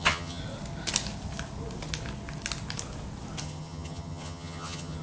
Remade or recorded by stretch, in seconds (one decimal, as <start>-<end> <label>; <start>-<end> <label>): 0.0-0.4 remade; 0.4-3.4 recorded; 3.4-5.0 remade